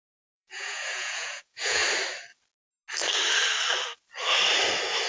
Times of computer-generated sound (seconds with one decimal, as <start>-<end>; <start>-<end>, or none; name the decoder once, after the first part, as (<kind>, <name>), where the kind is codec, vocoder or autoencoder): 0.0-1.8 (vocoder, Vocos)